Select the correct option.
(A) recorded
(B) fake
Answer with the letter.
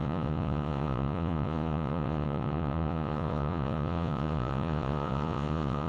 B